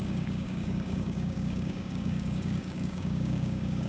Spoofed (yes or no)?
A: yes